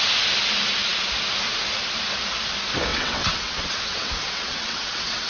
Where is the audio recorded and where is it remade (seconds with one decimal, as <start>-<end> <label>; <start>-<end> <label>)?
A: 0.0-2.9 recorded; 2.9-5.3 remade